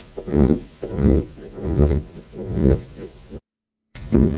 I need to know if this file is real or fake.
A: fake